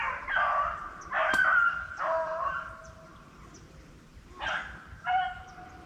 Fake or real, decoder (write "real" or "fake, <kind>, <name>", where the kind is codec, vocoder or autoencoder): real